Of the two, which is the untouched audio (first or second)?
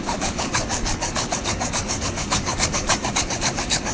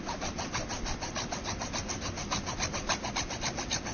second